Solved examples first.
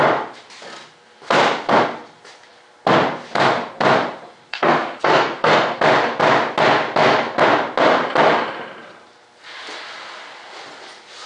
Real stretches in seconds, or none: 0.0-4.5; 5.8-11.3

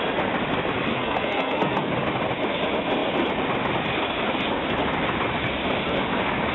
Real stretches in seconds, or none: 0.0-0.9; 1.9-6.5

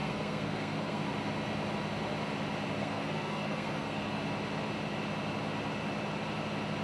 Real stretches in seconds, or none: 1.0-2.8; 4.1-6.8